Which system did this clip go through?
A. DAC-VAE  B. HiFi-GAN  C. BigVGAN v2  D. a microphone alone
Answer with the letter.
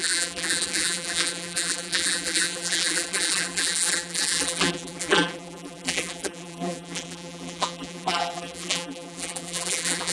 C